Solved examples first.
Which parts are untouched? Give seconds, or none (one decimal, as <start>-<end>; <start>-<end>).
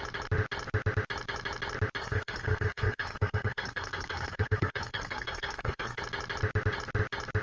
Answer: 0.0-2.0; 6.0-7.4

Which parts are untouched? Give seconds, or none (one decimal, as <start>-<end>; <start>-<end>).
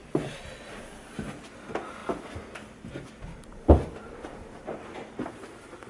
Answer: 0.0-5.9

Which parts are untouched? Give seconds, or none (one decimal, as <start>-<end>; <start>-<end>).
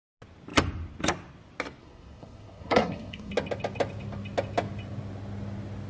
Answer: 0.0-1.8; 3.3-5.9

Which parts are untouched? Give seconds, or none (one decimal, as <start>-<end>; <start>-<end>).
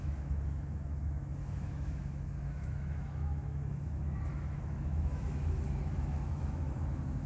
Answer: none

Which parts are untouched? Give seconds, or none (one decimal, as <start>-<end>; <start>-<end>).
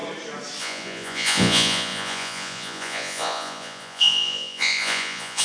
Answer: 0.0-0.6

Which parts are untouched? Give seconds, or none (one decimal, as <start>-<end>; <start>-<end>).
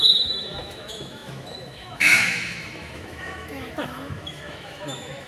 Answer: none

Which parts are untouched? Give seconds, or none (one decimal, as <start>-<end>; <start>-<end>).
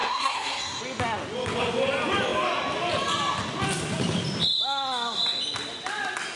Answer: 0.8-6.4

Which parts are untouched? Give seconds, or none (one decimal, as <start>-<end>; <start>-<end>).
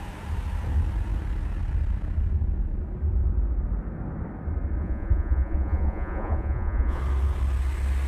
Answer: 0.0-4.8; 7.0-8.1